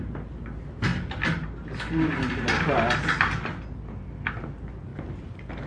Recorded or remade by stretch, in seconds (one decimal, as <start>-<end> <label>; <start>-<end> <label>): 0.0-0.9 recorded; 0.9-4.3 remade; 4.3-4.9 recorded; 4.9-5.7 remade